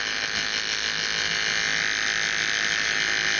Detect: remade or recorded recorded